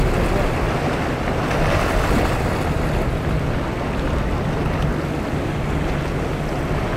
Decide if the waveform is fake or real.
real